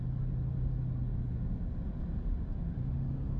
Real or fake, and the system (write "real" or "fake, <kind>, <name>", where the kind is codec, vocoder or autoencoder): real